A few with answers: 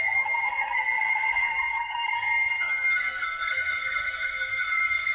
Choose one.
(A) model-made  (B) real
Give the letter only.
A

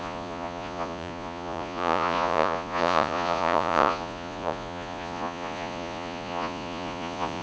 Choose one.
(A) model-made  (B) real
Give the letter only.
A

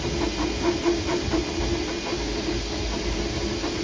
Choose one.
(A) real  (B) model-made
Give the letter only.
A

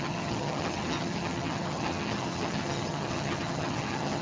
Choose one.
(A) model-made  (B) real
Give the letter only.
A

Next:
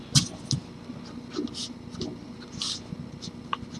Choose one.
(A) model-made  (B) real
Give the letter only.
B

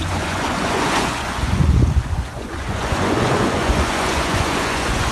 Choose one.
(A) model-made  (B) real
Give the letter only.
A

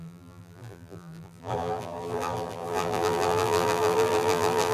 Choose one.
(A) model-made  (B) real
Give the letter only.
A